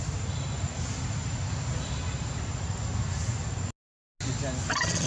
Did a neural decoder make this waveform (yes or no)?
no